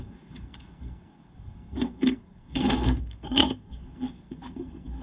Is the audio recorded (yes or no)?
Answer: no